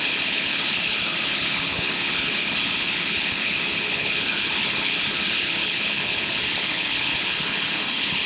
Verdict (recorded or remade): remade